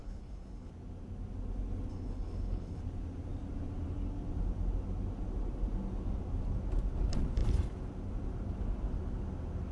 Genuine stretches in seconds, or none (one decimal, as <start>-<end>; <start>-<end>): 0.7-1.9; 2.8-9.7